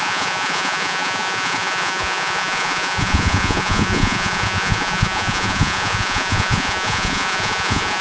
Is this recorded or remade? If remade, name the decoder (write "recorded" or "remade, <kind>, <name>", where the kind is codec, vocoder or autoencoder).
remade, vocoder, Vocos